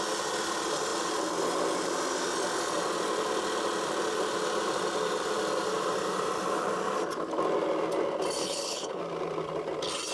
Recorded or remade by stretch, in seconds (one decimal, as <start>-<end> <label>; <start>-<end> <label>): 0.0-8.4 recorded; 8.4-9.0 remade; 9.0-10.1 recorded